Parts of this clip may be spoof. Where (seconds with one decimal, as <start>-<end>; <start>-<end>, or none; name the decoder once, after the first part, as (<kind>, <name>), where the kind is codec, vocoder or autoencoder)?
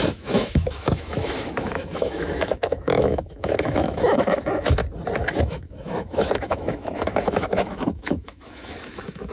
0.0-4.8 (autoencoder, DAC-VAE); 5.4-9.3